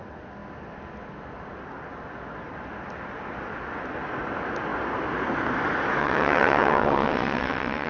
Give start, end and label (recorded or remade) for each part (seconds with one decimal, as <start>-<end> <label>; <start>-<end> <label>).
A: 0.0-6.0 recorded; 6.0-7.9 remade

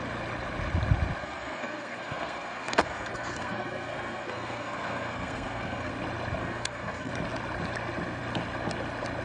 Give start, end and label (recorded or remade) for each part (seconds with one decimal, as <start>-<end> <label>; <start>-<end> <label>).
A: 0.0-1.2 recorded; 1.2-5.9 remade; 5.9-6.4 recorded; 6.4-7.1 remade; 7.1-9.2 recorded